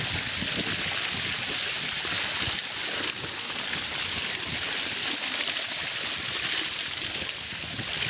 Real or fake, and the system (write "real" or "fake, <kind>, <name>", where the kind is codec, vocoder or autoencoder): real